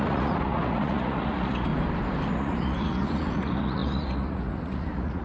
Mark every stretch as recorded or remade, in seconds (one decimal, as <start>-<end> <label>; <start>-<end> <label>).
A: 0.0-1.7 remade; 1.7-2.3 recorded; 2.3-5.2 remade